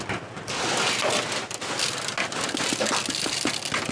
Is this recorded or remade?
recorded